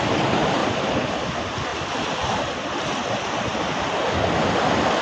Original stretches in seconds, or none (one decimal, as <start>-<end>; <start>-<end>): 0.0-0.6; 1.1-1.7